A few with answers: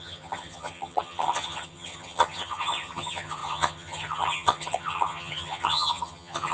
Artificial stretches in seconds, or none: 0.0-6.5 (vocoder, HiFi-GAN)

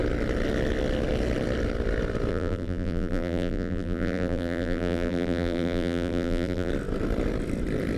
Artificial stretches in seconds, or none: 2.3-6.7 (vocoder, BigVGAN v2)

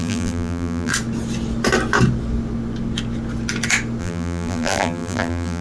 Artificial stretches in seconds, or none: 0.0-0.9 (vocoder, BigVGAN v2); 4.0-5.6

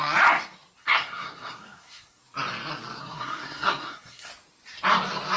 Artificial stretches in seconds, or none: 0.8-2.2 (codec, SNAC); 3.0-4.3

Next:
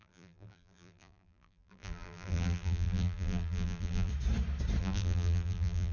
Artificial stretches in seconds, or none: 0.0-4.1 (vocoder, BigVGAN v2); 4.8-5.9

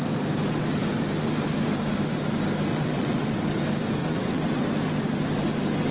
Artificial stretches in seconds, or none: 2.7-3.4 (vocoder, WaveNeXt); 4.0-4.6

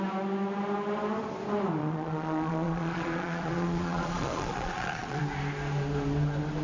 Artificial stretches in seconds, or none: 1.8-5.2 (vocoder, Vocos)

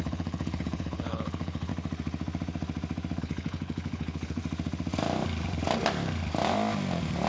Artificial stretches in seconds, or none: 0.0-1.7 (codec, HILCodec); 3.2-4.4